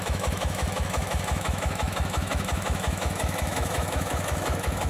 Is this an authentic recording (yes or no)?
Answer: no